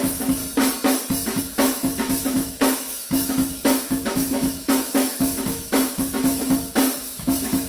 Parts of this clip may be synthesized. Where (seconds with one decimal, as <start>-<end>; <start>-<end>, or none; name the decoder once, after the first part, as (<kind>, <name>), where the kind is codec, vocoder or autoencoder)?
0.0-0.4 (autoencoder, DAC-VAE); 1.4-7.7